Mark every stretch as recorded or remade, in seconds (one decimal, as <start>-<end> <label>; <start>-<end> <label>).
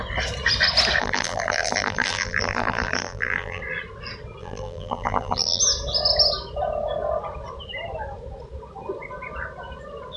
0.0-1.0 recorded; 1.0-3.6 remade; 3.6-4.4 recorded; 4.4-5.6 remade; 5.6-10.2 recorded